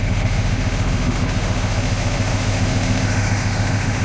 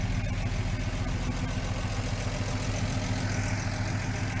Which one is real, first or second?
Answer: second